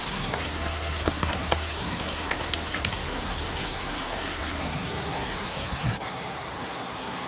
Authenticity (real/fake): fake